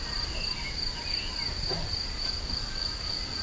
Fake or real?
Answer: real